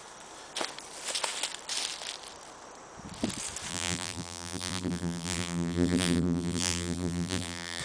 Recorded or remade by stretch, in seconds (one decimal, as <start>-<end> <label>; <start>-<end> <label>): 0.0-3.7 recorded; 3.7-7.8 remade